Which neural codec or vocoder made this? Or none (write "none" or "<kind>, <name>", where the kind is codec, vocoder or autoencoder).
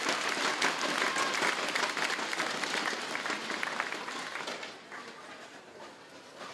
none